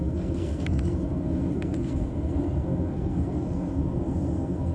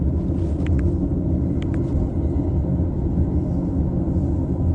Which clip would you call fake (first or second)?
first